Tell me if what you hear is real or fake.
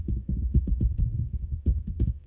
fake